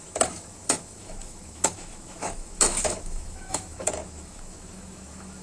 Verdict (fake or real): fake